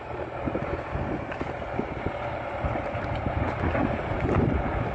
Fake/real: real